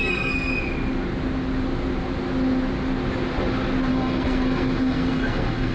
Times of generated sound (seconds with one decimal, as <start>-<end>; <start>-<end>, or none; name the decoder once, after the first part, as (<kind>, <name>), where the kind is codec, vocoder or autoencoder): 0.0-0.5 (codec, SNAC); 3.9-5.7